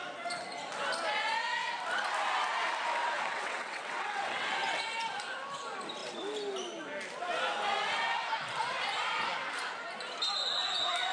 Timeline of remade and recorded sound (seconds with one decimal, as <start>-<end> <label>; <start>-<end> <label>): 0.0-3.0 recorded; 3.0-4.8 remade; 4.8-11.1 recorded